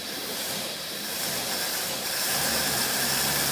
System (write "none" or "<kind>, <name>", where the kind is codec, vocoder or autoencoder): vocoder, BigVGAN v2